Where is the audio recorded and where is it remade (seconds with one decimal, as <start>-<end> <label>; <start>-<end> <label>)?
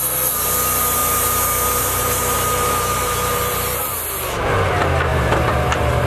0.0-1.0 recorded; 1.0-3.8 remade; 3.8-5.1 recorded; 5.1-6.1 remade